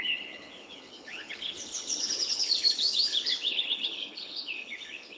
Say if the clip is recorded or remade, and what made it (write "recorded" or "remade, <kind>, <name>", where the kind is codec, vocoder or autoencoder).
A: remade, codec, HILCodec